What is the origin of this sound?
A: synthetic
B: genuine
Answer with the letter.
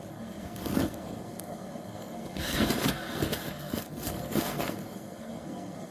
A